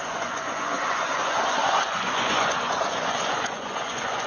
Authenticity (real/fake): fake